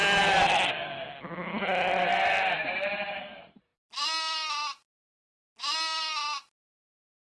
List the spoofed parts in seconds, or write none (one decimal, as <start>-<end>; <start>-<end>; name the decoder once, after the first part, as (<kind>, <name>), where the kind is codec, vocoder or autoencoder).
none